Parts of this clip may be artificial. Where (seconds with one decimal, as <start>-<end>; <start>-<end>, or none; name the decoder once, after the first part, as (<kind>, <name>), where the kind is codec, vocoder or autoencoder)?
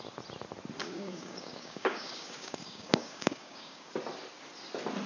0.8-3.9 (codec, DAC)